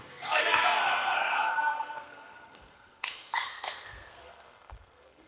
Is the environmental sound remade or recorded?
remade